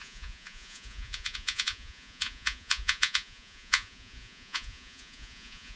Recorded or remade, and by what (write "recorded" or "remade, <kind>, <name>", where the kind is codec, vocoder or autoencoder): remade, vocoder, Vocos